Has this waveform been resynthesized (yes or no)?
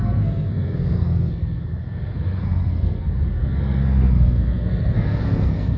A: yes